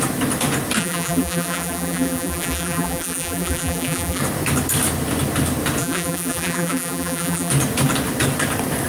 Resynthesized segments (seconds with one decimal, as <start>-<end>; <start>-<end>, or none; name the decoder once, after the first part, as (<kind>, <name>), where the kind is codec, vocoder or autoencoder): 0.8-4.2 (vocoder, BigVGAN v2); 5.8-7.5